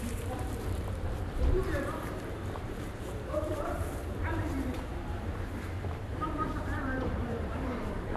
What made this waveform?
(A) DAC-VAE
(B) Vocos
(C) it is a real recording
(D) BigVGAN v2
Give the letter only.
D